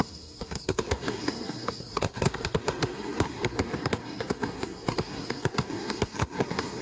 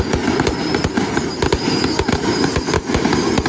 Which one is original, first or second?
second